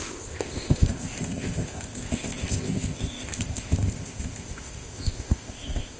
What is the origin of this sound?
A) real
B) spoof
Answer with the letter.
B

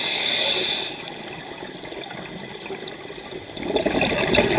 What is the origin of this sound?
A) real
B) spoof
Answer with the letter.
A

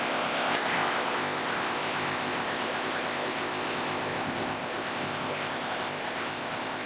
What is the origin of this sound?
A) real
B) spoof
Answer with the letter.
B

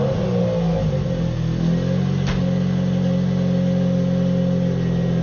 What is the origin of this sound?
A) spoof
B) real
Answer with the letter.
B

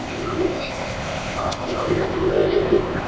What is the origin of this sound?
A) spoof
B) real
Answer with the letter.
A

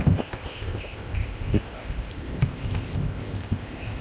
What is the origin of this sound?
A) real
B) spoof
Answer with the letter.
B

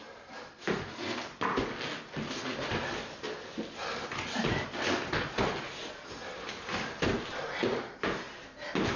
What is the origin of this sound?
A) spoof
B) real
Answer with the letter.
B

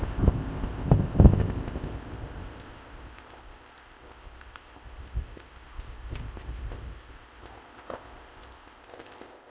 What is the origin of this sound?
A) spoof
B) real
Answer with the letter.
A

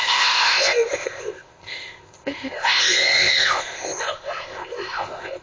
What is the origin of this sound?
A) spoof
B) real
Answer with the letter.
A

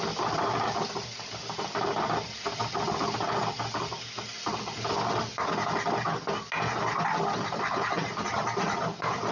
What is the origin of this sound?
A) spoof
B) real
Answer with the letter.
B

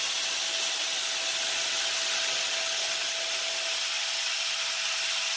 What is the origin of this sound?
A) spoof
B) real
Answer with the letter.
B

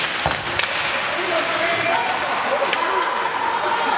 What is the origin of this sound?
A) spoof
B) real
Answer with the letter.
B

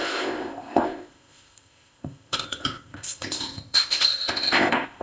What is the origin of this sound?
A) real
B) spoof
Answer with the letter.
B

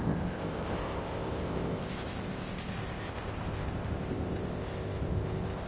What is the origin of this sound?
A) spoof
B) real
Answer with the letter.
A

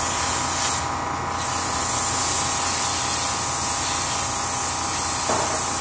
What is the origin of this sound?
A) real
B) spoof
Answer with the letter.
A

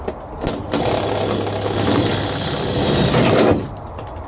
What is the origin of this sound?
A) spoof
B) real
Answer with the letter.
B